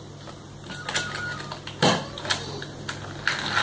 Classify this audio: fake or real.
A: fake